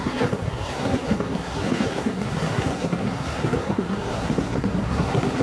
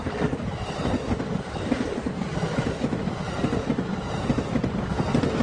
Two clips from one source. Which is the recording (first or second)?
second